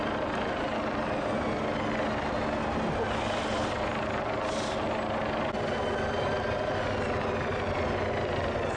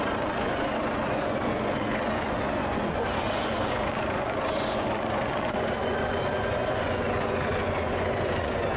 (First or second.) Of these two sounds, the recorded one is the first